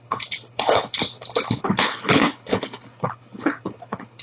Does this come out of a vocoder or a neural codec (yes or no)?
yes